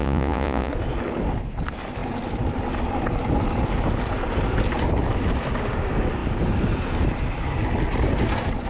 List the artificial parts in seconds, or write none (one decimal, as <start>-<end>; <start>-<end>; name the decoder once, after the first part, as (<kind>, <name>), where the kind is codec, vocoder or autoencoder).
0.0-0.7 (vocoder, Vocos)